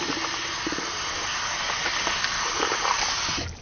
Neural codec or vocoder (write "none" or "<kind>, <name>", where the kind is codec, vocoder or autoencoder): none